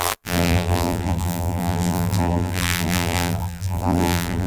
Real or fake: fake